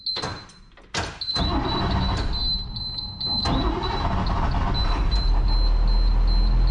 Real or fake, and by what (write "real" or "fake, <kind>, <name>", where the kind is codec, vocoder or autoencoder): real